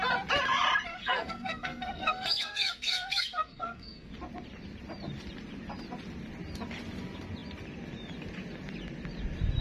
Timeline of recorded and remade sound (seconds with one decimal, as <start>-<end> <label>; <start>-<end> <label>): 0.0-0.9 recorded; 0.9-4.1 remade; 4.1-9.6 recorded

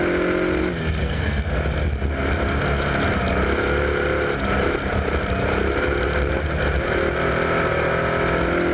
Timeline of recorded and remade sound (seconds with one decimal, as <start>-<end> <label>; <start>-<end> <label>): 0.0-1.0 recorded; 1.0-1.5 remade; 1.5-8.7 recorded

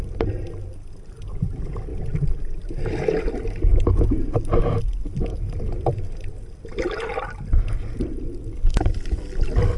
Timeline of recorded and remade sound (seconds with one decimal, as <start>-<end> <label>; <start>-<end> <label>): 0.0-9.8 recorded

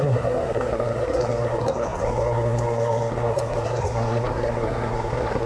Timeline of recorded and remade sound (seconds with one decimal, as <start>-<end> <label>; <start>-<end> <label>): 0.0-5.5 remade

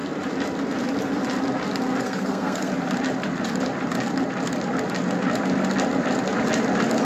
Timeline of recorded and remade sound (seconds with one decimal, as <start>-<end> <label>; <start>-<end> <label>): 0.0-2.0 recorded; 2.0-2.7 remade; 2.7-7.0 recorded

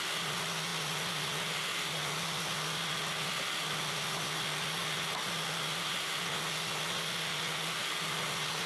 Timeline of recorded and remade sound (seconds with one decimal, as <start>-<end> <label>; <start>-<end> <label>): 0.0-8.7 recorded

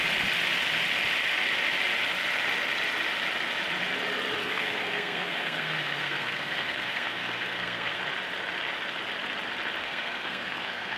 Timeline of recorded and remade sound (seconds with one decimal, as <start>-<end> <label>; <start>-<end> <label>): 0.0-4.4 recorded; 4.4-8.0 remade; 8.0-9.8 recorded; 9.8-11.0 remade

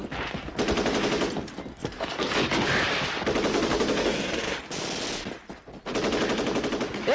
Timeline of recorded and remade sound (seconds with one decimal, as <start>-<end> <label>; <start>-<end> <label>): 0.0-0.5 remade; 0.5-1.7 recorded; 1.7-2.3 remade; 2.3-3.5 recorded; 3.5-4.6 remade; 4.6-7.1 recorded